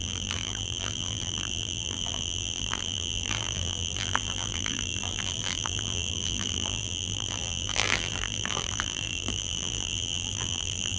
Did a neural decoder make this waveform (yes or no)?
yes